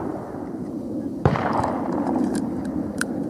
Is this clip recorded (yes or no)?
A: no